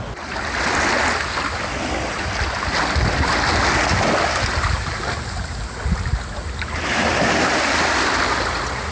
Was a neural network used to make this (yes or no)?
no